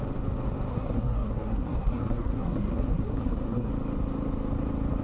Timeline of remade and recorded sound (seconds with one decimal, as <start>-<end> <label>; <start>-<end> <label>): 0.0-0.7 recorded; 0.7-3.7 remade; 3.7-5.0 recorded